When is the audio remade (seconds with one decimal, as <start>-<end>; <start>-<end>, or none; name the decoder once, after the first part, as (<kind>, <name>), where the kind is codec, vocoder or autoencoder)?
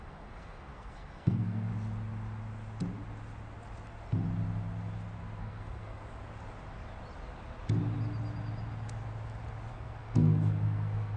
0.0-1.7 (codec, SNAC); 5.4-6.0; 9.7-11.2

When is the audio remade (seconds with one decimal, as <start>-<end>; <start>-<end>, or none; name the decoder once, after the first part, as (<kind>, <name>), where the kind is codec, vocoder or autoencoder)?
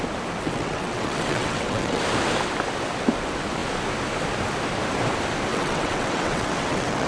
0.4-2.0 (vocoder, WaveNeXt); 5.5-7.1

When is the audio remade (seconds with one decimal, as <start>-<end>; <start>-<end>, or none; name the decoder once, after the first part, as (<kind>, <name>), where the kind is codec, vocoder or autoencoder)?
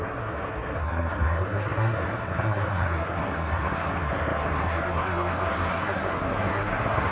0.0-7.1 (codec, SNAC)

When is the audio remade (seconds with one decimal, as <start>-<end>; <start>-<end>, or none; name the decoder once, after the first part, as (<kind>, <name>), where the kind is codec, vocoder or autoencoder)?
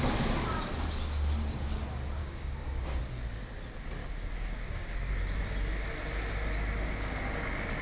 2.2-3.0 (codec, DAC); 4.0-5.1